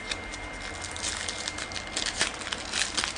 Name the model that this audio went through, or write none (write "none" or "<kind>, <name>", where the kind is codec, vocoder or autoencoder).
none